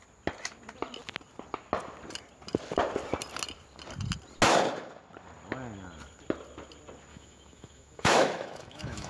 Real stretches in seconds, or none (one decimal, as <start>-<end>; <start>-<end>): 0.0-7.1